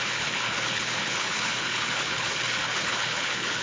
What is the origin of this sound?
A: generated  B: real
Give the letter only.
A